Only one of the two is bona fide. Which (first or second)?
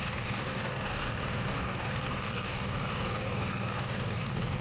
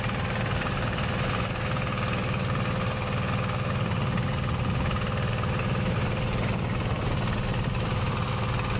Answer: second